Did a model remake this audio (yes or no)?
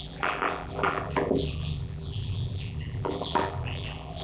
yes